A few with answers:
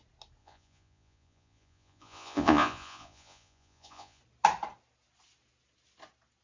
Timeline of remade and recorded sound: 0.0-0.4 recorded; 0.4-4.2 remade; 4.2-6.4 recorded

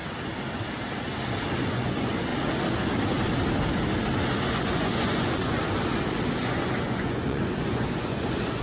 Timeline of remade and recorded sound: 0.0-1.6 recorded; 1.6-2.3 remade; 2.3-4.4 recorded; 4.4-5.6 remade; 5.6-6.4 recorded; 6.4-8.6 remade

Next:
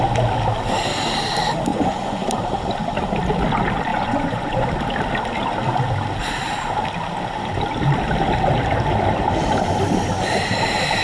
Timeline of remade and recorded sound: 0.0-1.7 recorded; 1.7-2.3 remade; 2.3-3.9 recorded; 3.9-4.7 remade; 4.7-11.0 recorded

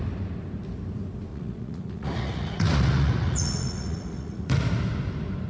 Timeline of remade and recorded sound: 0.0-1.3 recorded; 1.3-4.6 remade; 4.6-5.5 recorded

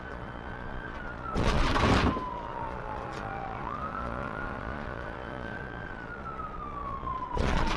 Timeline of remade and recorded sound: 0.0-1.7 remade; 1.7-2.3 recorded; 2.3-7.8 remade

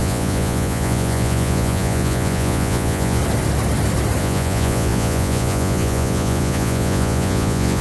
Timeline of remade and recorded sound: 0.0-3.2 remade; 3.2-4.2 recorded; 4.2-7.8 remade